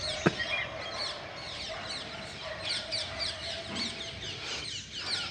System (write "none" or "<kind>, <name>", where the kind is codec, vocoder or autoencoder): none